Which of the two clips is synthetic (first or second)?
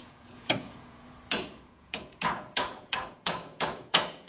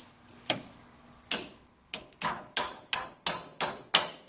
first